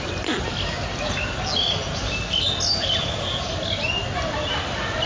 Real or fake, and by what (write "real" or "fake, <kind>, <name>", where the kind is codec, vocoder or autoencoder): real